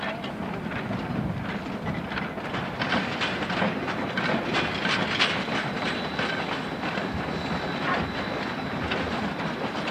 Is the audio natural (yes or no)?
yes